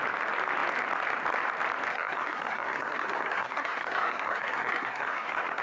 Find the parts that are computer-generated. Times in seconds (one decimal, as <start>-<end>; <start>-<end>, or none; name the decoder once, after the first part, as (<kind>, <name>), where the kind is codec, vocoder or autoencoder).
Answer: 1.9-5.6 (codec, SNAC)